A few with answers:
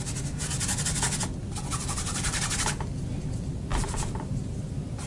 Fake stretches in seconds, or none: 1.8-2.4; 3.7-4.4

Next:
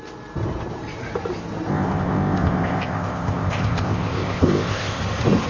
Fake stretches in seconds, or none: 1.7-5.0

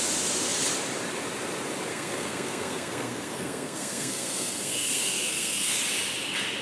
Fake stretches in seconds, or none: 1.9-5.8

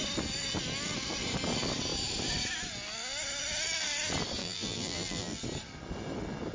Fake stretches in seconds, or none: 4.4-5.4